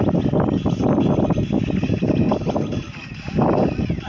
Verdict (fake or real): real